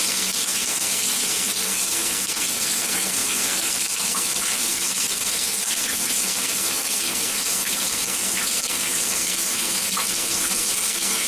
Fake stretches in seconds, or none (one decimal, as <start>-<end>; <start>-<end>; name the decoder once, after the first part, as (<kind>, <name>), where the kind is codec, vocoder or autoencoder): 0.0-11.3 (codec, SNAC)